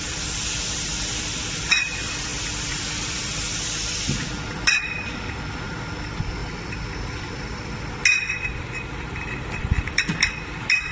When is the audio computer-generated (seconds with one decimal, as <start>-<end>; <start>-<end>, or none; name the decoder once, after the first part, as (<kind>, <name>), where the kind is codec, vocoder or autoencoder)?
0.0-10.9 (vocoder, BigVGAN v2)